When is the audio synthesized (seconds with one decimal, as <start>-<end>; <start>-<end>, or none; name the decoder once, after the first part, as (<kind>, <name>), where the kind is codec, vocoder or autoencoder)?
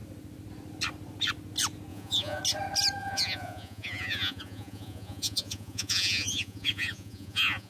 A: 1.9-2.4 (vocoder, Vocos); 3.0-7.7